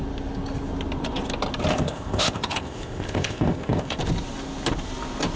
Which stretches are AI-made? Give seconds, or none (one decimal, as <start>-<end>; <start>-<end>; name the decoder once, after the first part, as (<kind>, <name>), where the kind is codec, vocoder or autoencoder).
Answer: 1.7-4.0 (codec, ZipCodec)